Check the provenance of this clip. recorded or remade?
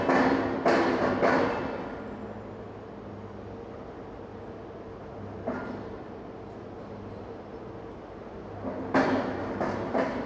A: recorded